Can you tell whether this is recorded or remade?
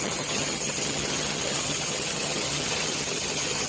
remade